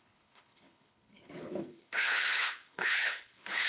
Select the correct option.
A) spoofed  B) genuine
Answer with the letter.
A